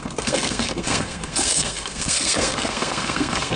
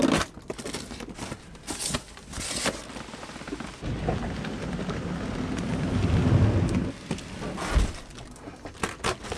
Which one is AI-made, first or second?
first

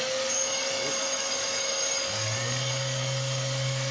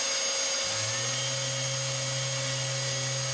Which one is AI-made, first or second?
first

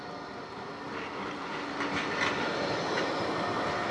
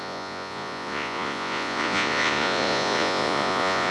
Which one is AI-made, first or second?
second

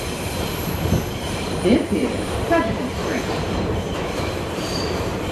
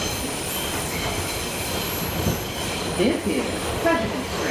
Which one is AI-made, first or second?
first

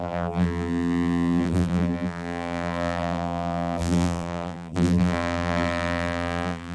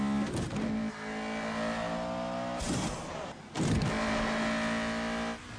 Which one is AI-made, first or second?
first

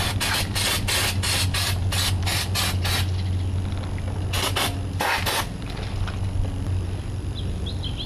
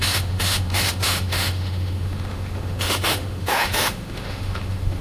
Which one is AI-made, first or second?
second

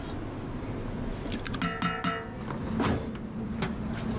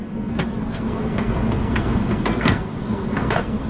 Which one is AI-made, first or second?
second